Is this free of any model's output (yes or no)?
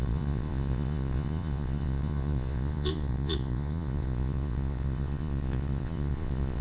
no